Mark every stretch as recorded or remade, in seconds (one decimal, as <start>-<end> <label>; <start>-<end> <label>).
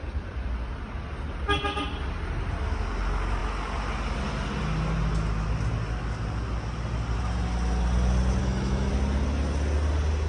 0.0-8.4 recorded; 8.4-8.9 remade; 8.9-10.3 recorded